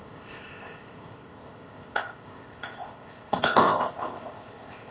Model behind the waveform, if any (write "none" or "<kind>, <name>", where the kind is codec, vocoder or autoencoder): codec, ZipCodec